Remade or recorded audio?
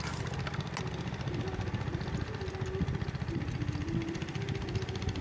recorded